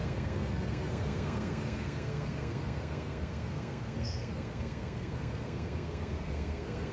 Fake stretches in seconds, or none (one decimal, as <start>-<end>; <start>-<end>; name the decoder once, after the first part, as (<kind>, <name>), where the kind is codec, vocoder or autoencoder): 0.0-6.9 (codec, SNAC)